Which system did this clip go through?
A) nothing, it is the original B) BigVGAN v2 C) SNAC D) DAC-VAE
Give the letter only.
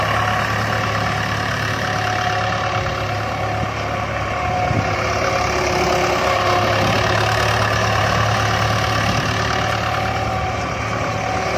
A